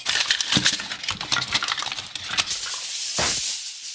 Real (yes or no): yes